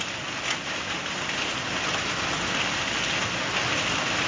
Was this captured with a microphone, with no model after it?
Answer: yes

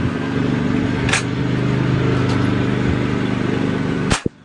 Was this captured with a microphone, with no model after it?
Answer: yes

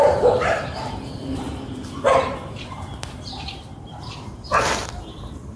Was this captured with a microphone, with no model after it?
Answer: no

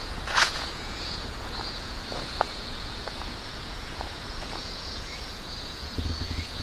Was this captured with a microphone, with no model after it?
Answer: no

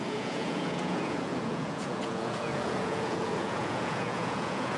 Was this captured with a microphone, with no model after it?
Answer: no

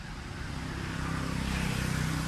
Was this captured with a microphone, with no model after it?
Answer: yes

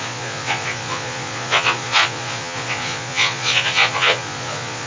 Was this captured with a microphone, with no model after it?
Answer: no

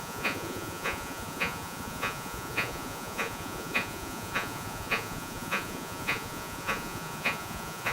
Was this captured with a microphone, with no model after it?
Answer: no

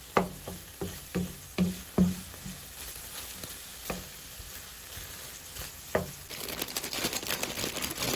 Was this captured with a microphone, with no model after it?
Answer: yes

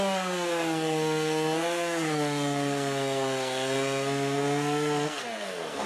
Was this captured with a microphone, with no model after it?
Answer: no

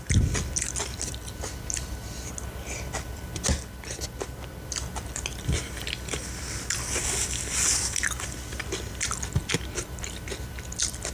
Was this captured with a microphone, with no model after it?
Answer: yes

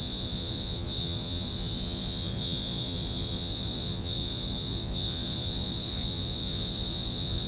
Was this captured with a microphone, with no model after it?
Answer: no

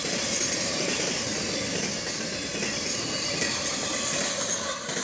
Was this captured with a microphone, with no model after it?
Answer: yes